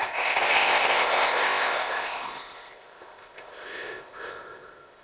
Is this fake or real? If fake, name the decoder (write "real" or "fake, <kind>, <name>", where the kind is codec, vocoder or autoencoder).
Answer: fake, codec, ZipCodec